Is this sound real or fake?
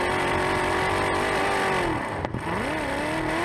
real